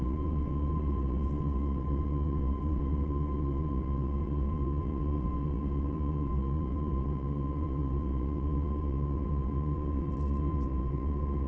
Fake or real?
fake